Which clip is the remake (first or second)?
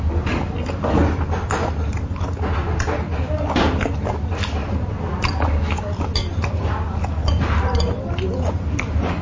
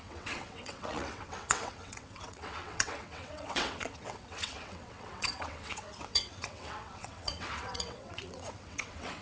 second